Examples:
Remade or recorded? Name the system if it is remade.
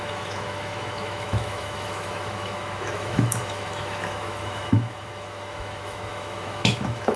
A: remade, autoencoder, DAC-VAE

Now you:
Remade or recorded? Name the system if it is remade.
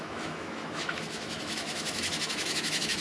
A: remade, autoencoder, DAC-VAE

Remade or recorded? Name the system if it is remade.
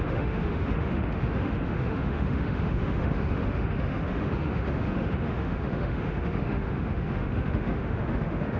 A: remade, autoencoder, DAC-VAE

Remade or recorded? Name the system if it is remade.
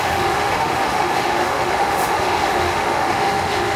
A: remade, autoencoder, DAC-VAE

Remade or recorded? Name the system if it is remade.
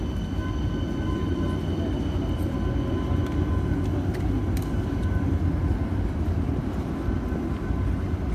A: recorded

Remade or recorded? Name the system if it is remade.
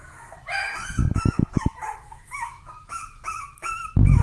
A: remade, autoencoder, DAC-VAE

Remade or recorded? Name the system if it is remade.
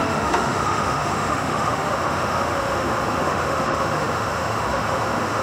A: remade, autoencoder, DAC-VAE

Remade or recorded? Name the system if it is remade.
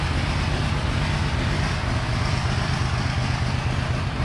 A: recorded